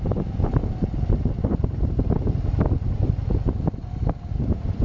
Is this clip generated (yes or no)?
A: no